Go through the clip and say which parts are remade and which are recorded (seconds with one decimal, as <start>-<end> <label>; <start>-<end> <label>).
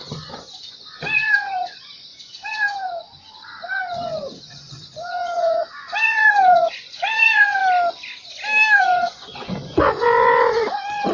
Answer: 0.0-7.6 remade; 7.6-8.8 recorded; 8.8-11.1 remade